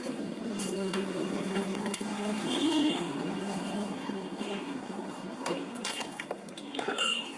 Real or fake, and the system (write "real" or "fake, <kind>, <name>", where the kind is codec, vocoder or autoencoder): fake, codec, SNAC